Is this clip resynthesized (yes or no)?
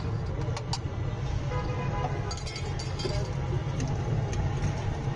no